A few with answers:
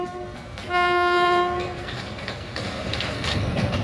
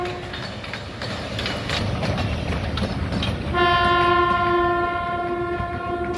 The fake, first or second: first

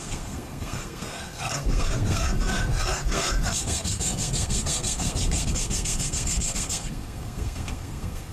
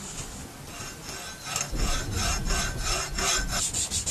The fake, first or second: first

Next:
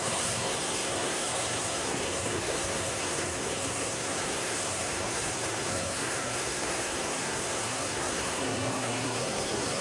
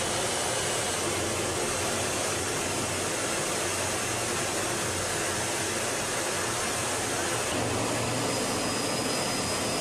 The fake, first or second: first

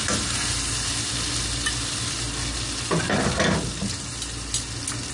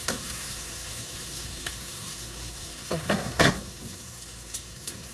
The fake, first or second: second